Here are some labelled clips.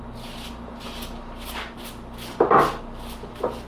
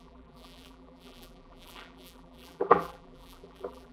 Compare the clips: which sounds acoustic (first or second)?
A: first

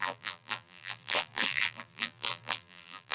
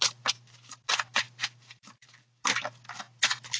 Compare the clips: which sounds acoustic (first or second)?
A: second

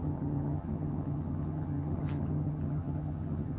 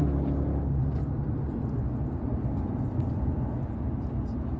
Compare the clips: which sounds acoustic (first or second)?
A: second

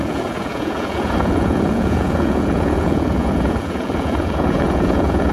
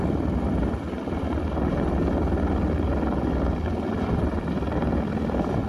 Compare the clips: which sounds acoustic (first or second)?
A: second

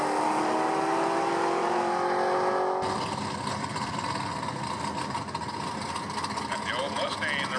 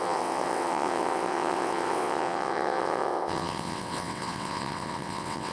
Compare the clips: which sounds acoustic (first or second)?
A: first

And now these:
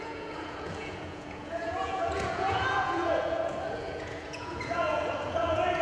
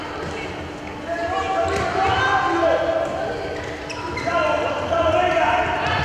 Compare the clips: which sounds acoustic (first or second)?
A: second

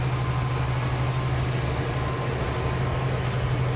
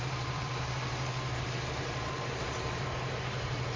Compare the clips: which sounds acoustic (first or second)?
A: first